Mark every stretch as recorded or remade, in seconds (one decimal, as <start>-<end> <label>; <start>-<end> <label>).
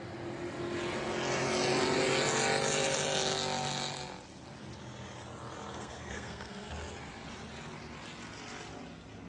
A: 0.0-5.7 recorded; 5.7-6.7 remade; 6.7-9.3 recorded